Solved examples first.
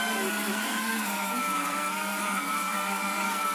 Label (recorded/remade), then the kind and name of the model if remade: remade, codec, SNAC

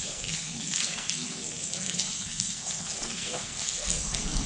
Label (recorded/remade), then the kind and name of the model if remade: remade, codec, SNAC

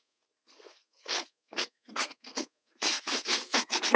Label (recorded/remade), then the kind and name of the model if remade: remade, codec, SNAC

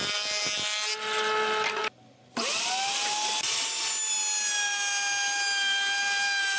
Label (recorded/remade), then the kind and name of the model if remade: recorded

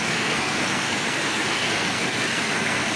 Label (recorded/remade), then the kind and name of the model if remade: remade, codec, SNAC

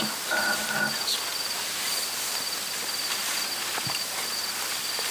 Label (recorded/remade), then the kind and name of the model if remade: recorded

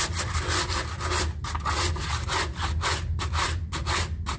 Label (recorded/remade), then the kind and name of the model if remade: recorded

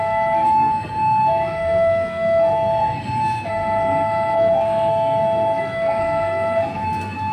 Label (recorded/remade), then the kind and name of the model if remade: remade, codec, SNAC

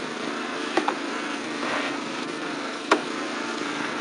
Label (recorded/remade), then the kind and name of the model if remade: remade, codec, SNAC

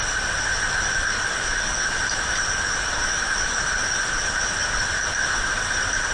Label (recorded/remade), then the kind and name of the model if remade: recorded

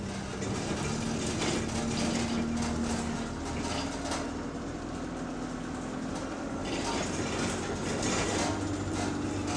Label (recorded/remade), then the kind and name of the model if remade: recorded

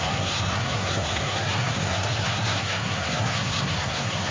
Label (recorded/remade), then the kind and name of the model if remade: remade, codec, SNAC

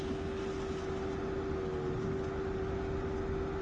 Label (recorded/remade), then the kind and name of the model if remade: recorded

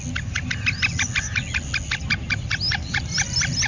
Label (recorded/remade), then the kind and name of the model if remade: recorded